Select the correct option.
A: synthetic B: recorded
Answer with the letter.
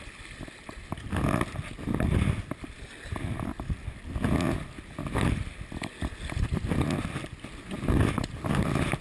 B